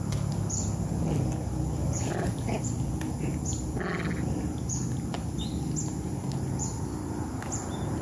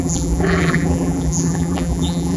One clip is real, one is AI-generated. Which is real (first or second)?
first